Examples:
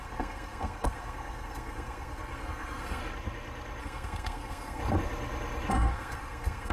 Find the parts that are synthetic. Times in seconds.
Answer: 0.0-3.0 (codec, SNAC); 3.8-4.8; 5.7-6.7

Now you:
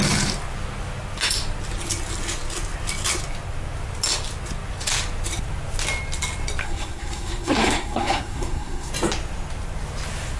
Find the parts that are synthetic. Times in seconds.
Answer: 6.6-8.9 (codec, SNAC)

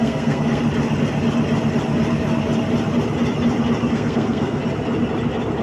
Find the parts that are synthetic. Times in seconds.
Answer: 0.0-0.6 (codec, SNAC); 3.9-4.6

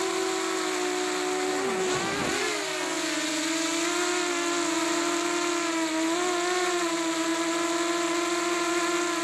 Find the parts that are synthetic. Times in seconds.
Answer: none